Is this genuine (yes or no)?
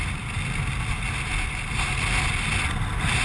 yes